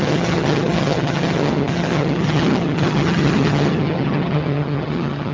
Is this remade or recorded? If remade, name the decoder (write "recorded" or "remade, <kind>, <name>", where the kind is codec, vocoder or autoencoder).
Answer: remade, vocoder, HiFi-GAN